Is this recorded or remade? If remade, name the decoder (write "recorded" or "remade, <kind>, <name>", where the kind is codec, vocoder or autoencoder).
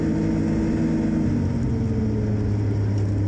recorded